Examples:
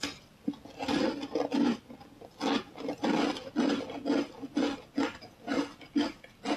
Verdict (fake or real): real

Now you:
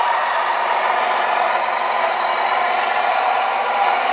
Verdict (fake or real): fake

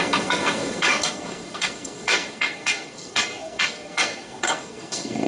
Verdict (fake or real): fake